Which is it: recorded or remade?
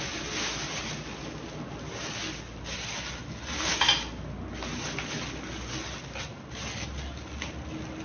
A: recorded